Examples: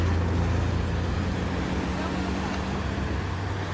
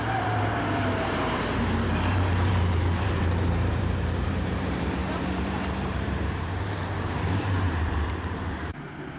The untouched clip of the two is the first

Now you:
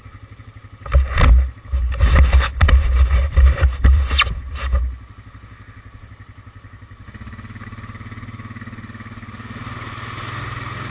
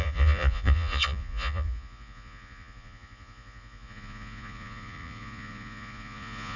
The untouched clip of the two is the first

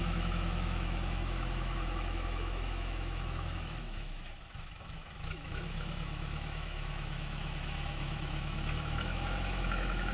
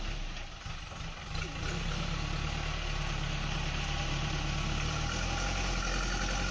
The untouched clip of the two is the second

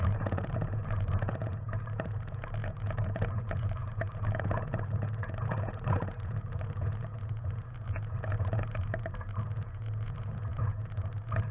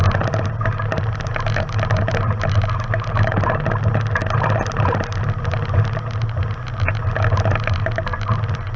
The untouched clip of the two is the second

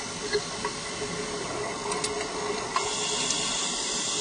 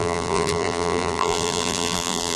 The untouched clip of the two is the first